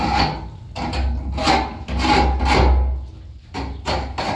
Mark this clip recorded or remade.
recorded